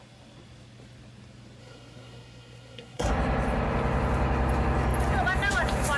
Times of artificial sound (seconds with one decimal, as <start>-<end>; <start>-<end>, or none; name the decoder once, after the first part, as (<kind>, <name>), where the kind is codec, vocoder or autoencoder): 1.6-3.1 (codec, SNAC)